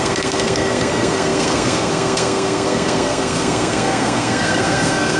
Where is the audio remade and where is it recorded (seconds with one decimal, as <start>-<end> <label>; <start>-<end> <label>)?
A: 0.0-5.2 remade